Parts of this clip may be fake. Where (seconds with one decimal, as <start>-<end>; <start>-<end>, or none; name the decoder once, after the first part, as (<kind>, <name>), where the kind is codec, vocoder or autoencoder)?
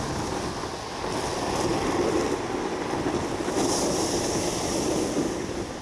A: none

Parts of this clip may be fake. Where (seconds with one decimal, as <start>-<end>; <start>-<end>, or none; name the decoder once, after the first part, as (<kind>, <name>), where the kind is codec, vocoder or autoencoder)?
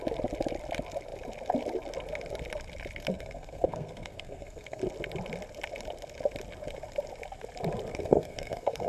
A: 3.1-4.8 (codec, SNAC); 7.9-8.9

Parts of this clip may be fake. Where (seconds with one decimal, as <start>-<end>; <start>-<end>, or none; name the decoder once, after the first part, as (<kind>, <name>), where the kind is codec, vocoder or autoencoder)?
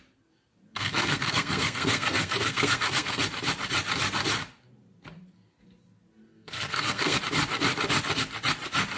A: 0.7-3.2 (codec, SNAC); 6.3-7.2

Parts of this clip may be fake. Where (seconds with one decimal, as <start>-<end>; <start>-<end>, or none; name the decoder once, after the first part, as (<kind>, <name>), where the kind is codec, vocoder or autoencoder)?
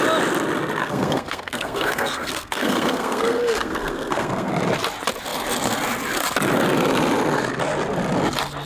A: 0.8-4.5 (codec, SNAC)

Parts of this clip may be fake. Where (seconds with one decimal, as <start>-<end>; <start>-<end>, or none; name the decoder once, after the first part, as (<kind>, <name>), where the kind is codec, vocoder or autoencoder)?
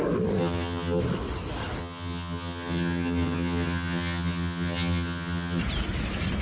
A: 0.4-1.0 (vocoder, HiFi-GAN); 1.8-5.6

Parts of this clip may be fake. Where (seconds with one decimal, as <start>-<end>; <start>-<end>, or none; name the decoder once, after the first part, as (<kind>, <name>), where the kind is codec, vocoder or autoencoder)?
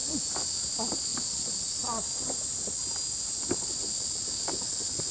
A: none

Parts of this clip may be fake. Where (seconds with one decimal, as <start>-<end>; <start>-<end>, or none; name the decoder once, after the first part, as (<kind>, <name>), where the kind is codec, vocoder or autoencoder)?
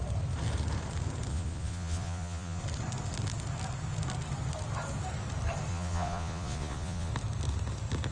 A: 1.3-2.6 (vocoder, Vocos); 5.7-7.1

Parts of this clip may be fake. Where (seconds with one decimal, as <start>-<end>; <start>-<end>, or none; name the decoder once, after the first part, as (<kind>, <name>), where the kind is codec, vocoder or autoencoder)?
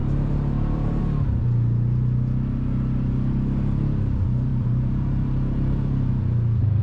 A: 0.0-1.0 (vocoder, BigVGAN v2); 4.5-6.1